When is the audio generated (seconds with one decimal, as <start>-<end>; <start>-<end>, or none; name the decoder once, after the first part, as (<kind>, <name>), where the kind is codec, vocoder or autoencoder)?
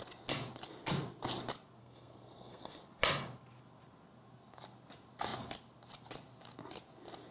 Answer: 1.8-2.8 (codec, SNAC)